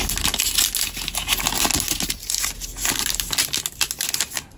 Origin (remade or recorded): recorded